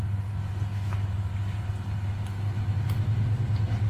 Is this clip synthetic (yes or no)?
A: no